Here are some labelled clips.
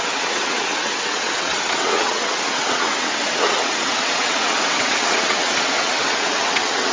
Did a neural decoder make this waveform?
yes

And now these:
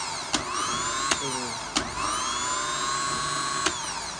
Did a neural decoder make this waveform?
no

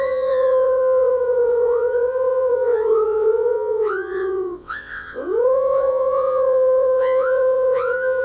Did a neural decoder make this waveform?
yes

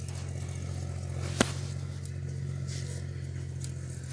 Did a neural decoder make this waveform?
no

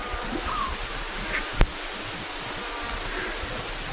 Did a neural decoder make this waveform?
no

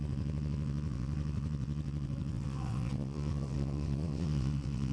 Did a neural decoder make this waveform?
yes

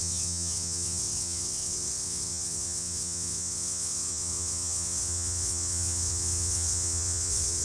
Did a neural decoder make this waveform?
yes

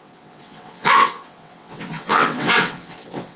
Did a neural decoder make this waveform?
yes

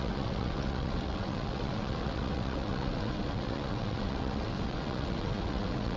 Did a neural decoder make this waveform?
yes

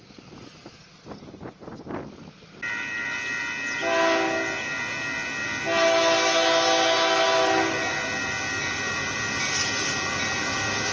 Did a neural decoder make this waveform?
no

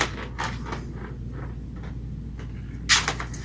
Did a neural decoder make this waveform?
no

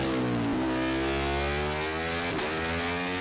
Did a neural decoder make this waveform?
no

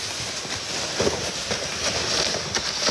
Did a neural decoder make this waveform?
no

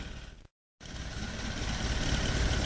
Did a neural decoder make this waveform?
no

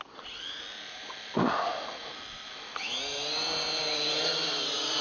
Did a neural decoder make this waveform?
no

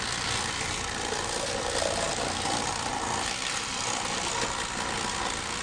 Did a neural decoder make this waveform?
no